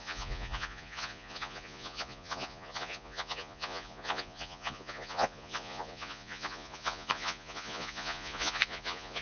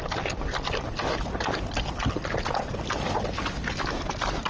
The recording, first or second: second